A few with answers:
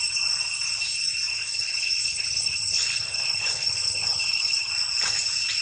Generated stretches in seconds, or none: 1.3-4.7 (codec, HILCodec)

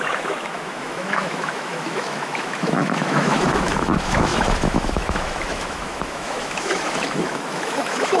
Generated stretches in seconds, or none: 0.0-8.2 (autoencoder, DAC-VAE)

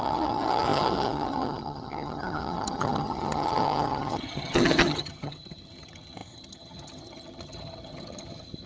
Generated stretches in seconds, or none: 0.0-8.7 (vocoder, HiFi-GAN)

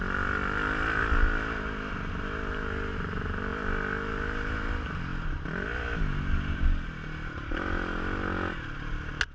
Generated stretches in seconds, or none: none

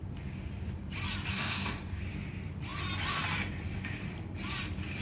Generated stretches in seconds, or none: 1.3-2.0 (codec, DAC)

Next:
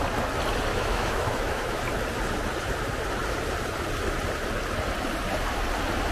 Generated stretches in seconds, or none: 0.7-1.8 (autoencoder, DAC-VAE)

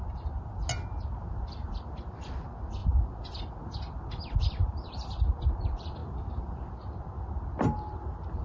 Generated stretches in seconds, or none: none